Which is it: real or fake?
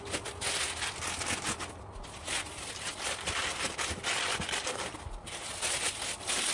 real